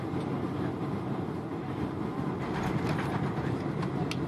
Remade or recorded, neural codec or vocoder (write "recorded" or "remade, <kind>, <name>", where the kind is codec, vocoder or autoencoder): recorded